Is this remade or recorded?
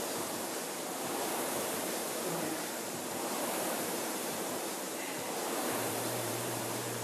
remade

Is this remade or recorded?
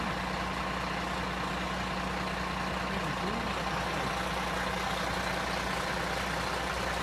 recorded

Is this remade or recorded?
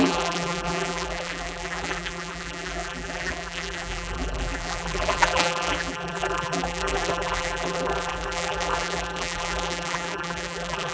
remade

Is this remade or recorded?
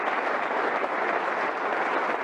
remade